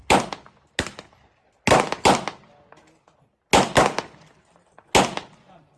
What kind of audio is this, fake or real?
real